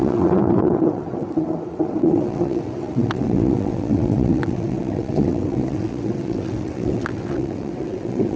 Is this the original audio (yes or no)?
no